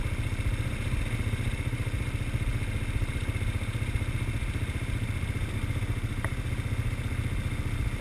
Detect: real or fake real